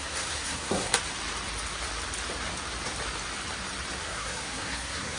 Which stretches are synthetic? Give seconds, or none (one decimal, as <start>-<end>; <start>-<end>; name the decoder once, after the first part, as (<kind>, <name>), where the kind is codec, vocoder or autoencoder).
0.0-0.9 (codec, SNAC); 4.0-5.2